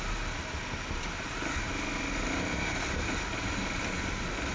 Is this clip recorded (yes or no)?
yes